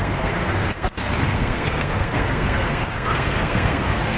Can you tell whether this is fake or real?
fake